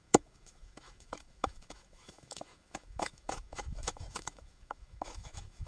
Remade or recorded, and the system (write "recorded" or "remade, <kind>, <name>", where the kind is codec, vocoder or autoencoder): remade, autoencoder, DAC-VAE